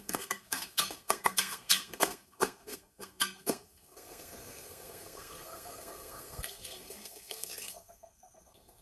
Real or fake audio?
fake